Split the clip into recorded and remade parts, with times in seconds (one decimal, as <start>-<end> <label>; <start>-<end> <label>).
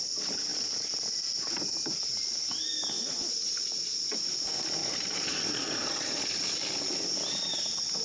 0.0-4.8 recorded; 4.8-6.2 remade; 6.2-8.0 recorded